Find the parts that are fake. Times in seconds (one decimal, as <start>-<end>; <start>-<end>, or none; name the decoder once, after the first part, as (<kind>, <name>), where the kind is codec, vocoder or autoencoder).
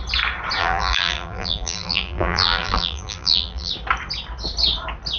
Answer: 0.6-3.7 (vocoder, BigVGAN v2)